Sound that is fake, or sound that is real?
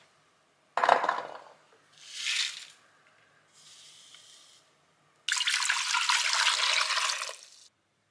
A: real